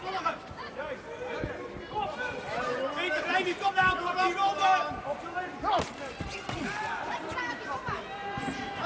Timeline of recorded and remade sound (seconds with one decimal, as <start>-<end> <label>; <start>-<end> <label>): 0.0-8.9 recorded